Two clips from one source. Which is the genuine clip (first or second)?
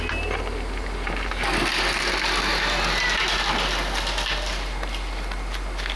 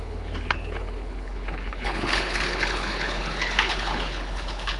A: first